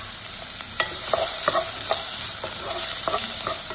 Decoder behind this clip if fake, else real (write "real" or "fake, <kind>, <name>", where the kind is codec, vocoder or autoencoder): fake, vocoder, BigVGAN v2